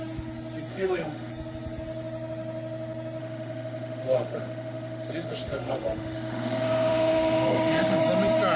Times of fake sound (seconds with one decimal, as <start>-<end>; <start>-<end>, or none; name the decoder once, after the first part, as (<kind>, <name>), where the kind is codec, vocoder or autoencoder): 0.7-1.3 (autoencoder, DAC-VAE); 3.2-8.0